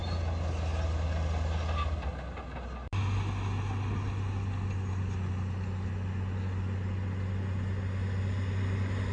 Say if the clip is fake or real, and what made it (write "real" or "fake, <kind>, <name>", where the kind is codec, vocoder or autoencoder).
real